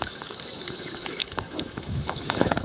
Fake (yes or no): yes